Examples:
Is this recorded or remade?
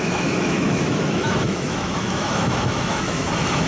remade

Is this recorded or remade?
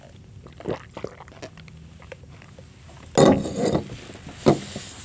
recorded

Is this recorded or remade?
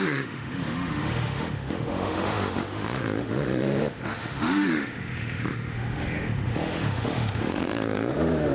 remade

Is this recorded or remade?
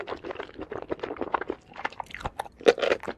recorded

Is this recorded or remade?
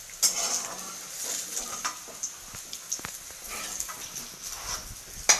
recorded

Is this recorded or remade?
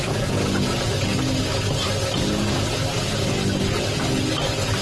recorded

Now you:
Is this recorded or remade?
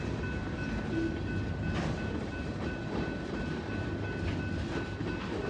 recorded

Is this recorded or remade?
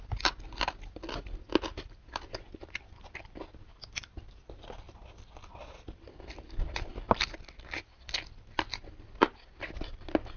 recorded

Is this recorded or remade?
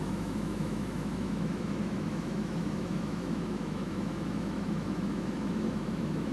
remade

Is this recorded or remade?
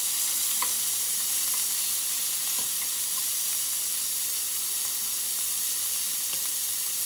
recorded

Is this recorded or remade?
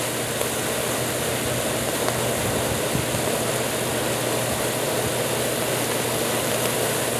recorded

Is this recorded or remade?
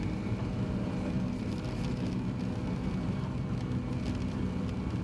recorded